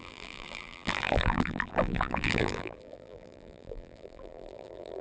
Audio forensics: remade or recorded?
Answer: remade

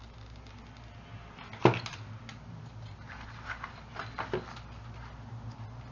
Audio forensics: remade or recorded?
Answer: recorded